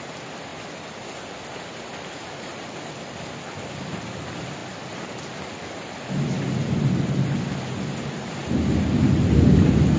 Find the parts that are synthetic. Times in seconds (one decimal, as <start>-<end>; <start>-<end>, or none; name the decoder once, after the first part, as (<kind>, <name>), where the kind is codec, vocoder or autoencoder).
none